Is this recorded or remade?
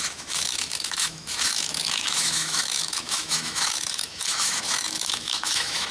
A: remade